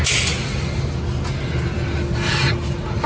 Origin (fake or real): real